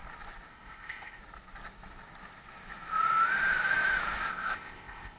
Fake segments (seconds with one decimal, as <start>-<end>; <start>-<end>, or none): 0.5-1.2; 4.3-5.2